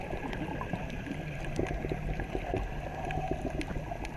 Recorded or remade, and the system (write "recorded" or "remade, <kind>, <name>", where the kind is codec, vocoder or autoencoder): recorded